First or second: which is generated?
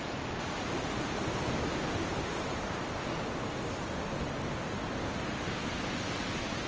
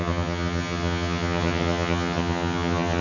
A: second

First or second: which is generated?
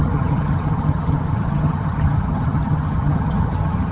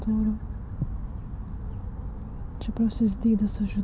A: first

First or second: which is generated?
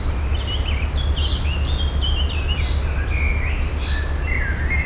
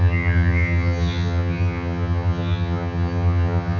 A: second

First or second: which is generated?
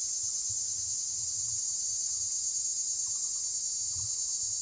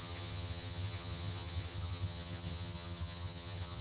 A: second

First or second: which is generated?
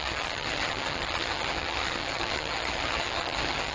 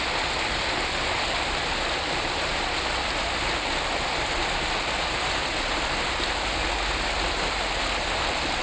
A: first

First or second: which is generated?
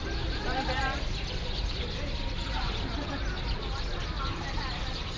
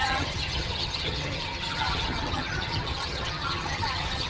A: second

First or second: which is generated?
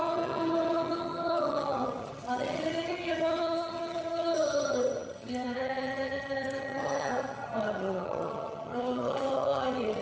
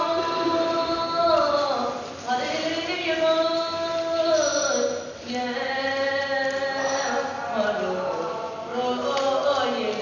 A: first